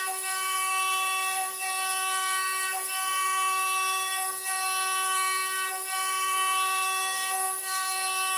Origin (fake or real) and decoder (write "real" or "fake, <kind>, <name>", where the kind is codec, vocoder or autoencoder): fake, codec, SNAC